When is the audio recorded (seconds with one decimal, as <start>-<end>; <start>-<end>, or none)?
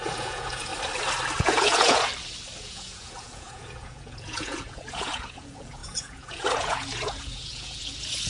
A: 0.7-1.4; 2.1-2.6